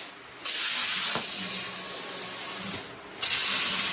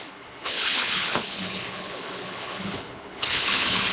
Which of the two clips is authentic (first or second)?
first